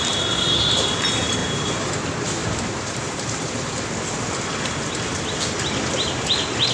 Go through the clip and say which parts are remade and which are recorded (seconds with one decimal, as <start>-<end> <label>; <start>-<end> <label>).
0.0-1.4 recorded; 1.4-1.9 remade; 1.9-2.4 recorded; 2.4-3.8 remade; 3.8-6.7 recorded